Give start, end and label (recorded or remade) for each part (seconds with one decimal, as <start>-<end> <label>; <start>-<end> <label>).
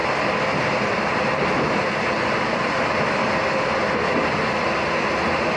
0.0-5.6 recorded